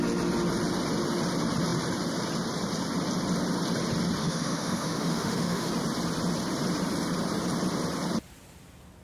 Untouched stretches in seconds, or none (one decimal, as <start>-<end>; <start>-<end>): 0.0-4.2; 5.7-9.0